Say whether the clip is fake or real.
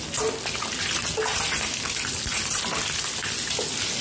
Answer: real